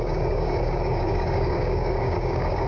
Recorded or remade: remade